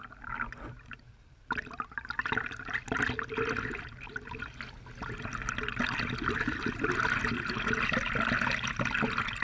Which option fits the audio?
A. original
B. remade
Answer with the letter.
A